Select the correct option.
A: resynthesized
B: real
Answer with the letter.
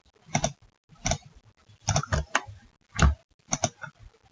B